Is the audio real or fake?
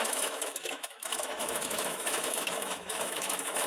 fake